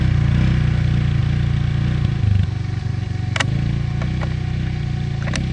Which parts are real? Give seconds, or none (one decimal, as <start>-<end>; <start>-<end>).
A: 0.0-5.5